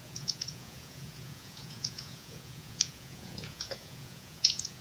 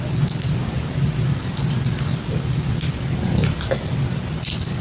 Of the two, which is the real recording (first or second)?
second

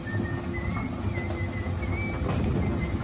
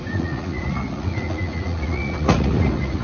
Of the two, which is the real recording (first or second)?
first